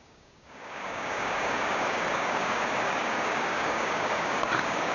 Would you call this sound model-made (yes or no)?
yes